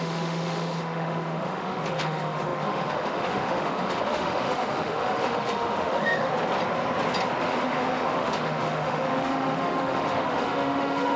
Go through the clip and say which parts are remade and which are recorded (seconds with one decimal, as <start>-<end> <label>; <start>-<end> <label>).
0.0-6.3 remade; 6.3-7.4 recorded; 7.4-11.2 remade